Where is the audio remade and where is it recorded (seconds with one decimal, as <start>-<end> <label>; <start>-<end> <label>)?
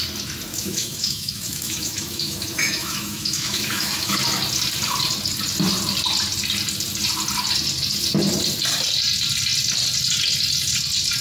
0.0-0.5 recorded; 0.5-4.2 remade; 4.2-11.2 recorded